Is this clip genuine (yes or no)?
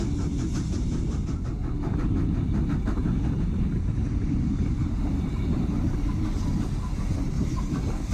yes